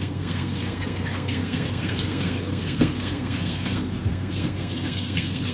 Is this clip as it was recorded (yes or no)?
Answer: no